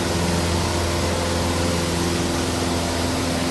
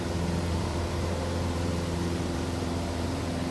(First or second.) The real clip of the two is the first